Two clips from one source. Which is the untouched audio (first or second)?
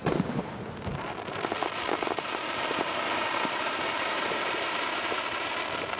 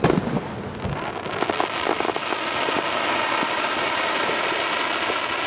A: second